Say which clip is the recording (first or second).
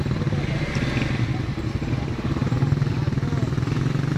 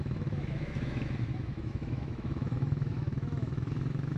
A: first